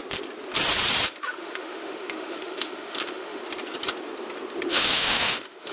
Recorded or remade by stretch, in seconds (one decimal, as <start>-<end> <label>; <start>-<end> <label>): 0.0-1.1 recorded; 1.1-3.4 remade; 3.4-4.7 recorded; 4.7-5.7 remade